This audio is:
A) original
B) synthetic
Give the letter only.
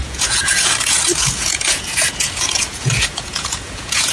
B